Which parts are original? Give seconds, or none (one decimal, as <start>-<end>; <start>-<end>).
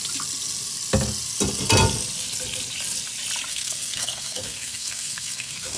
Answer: 0.0-3.5